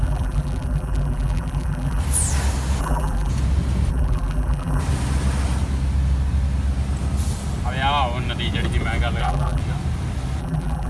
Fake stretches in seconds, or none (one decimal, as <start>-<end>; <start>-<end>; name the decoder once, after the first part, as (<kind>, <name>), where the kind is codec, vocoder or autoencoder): 0.0-2.0 (vocoder, BigVGAN v2); 2.8-3.3; 3.9-4.8; 9.2-9.6; 10.4-10.9